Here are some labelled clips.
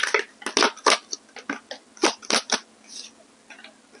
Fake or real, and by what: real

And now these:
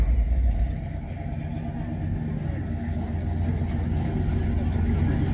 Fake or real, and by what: real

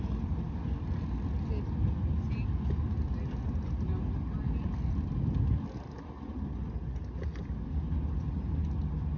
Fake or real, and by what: real